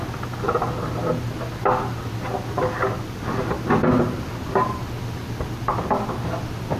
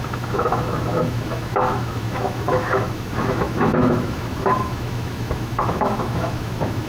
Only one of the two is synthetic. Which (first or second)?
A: second